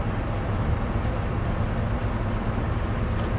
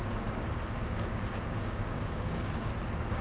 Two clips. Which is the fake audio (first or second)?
second